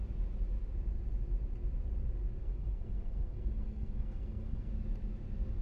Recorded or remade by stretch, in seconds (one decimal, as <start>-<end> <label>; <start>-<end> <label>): 0.0-2.4 recorded; 2.4-4.7 remade; 4.7-5.6 recorded